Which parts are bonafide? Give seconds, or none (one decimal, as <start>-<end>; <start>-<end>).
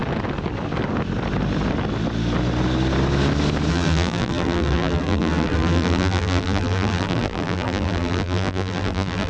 0.0-3.7